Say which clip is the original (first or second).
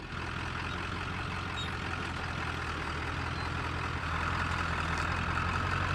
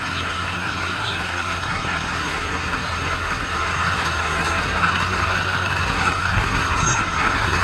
first